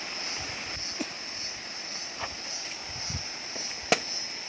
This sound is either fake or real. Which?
real